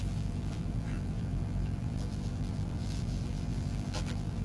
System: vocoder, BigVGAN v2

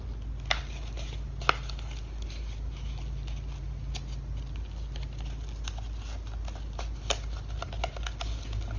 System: none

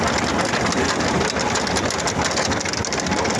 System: none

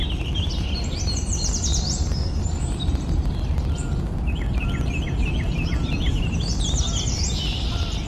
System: none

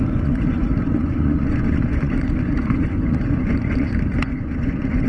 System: vocoder, Vocos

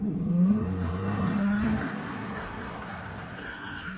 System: codec, SNAC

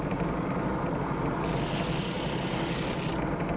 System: none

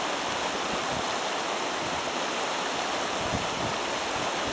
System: none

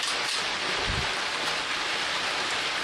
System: none